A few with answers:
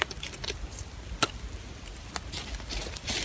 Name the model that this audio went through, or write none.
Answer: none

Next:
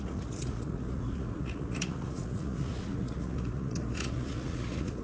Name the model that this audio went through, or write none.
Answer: vocoder, Vocos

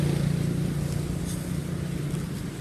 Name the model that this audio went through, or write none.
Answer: none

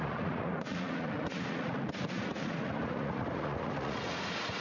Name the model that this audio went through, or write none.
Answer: vocoder, Vocos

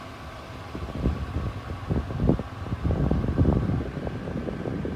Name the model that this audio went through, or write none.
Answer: none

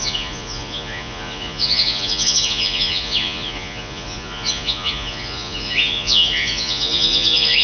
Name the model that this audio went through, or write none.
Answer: vocoder, Vocos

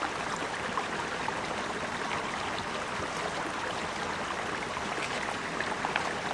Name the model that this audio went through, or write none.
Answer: none